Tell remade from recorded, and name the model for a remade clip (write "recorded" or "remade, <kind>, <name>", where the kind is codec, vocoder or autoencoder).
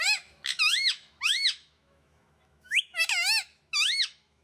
remade, autoencoder, DAC-VAE